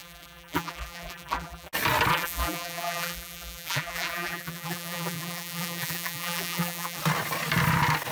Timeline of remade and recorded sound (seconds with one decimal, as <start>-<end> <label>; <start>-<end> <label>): 0.0-1.7 remade; 1.7-2.1 recorded; 2.1-7.0 remade; 7.0-8.1 recorded